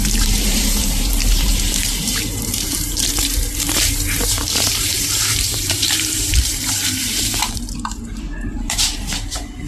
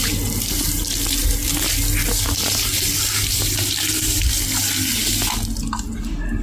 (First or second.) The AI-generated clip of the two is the first